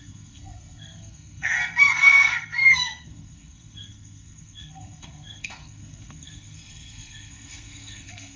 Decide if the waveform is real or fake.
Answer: fake